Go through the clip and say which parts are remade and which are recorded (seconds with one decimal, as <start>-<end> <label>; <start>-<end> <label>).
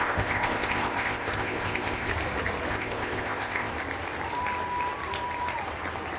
0.0-2.1 remade; 2.1-2.7 recorded; 2.7-3.7 remade; 3.7-6.2 recorded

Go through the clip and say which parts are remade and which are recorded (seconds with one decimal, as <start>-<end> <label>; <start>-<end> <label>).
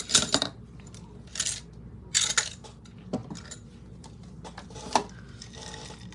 0.0-6.1 recorded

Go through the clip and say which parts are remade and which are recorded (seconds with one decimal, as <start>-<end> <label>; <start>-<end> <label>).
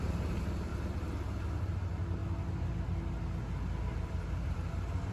0.0-0.7 remade; 0.7-1.6 recorded; 1.6-2.2 remade; 2.2-3.8 recorded; 3.8-5.1 remade